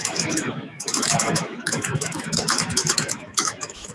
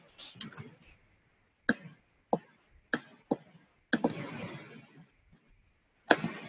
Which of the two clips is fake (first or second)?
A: first